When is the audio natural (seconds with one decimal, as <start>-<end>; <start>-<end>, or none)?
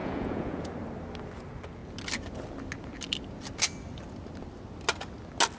0.7-5.6